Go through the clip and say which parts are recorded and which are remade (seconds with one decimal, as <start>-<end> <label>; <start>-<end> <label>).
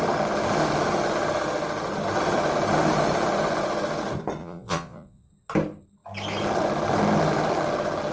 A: 0.0-4.4 recorded; 4.4-5.3 remade; 5.3-8.1 recorded